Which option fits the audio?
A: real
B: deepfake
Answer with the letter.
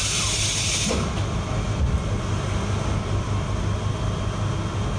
A